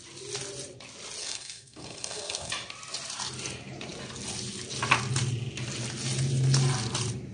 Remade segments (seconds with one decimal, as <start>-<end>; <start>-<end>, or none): 1.2-2.5